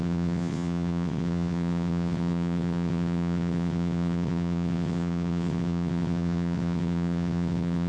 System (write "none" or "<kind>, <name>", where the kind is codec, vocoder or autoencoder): vocoder, WaveNeXt